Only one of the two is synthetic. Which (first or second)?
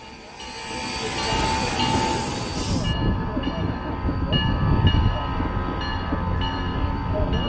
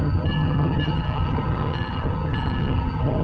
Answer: second